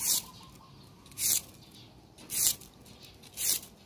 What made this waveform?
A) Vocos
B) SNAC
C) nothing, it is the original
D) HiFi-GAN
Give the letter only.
C